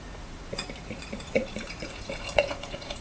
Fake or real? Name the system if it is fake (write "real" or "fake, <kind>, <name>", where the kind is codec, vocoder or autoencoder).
fake, vocoder, Vocos